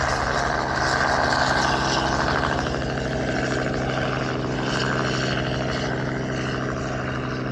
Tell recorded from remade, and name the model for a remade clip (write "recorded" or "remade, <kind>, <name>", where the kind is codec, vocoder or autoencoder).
recorded